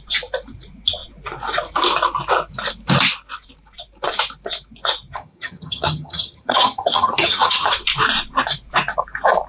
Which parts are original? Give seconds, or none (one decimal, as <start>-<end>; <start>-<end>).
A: 0.0-5.2; 7.7-9.5